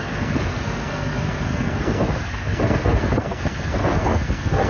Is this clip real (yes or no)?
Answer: no